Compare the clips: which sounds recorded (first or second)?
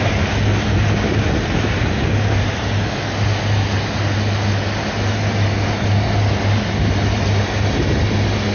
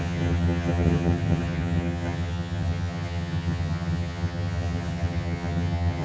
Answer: first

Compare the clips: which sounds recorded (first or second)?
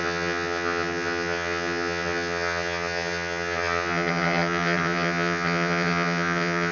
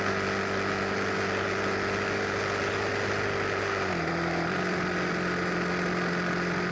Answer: second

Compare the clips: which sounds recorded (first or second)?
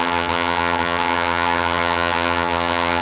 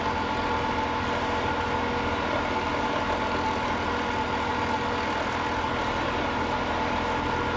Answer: second